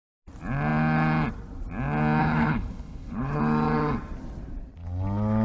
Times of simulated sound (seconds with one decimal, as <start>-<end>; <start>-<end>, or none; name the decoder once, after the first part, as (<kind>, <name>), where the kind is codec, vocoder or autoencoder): 2.2-3.4 (codec, HILCodec)